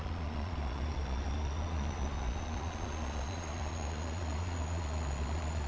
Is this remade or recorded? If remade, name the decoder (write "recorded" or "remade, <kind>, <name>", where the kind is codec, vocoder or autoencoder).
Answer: remade, vocoder, Vocos